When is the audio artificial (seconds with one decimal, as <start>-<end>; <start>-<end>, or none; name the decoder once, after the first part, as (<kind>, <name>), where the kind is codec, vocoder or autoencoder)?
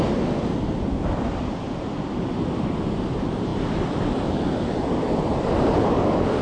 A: 3.5-4.1 (vocoder, BigVGAN v2)